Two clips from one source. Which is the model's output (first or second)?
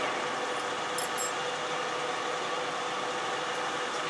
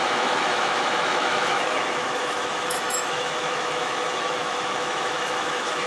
second